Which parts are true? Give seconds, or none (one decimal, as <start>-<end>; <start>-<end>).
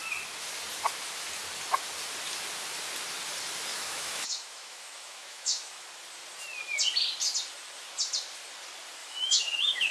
0.0-3.7; 5.9-9.0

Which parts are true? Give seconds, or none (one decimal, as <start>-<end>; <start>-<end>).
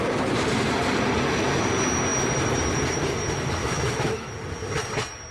0.0-3.6; 4.3-5.3